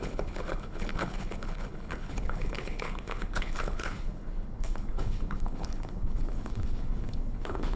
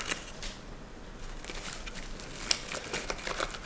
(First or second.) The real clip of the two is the second